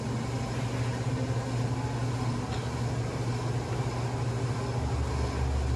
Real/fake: real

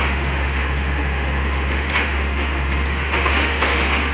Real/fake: fake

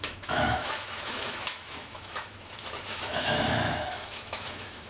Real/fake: fake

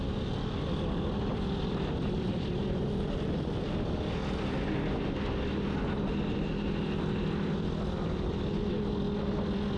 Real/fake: real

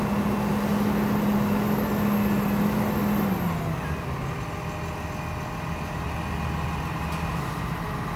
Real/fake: real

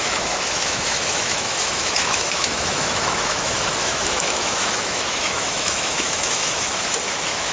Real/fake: fake